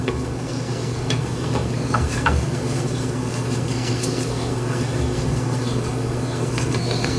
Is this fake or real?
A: fake